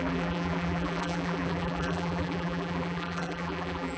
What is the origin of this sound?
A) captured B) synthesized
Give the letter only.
B